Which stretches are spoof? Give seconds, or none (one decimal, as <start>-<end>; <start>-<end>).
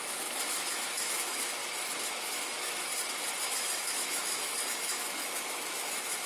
0.0-1.6; 2.3-2.9; 3.4-6.3